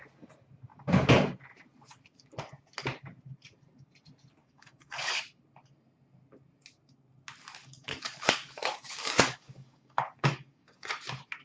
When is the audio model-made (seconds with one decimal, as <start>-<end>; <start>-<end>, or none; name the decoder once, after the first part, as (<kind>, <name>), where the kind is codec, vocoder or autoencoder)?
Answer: 4.4-5.2 (codec, DAC); 7.6-10.9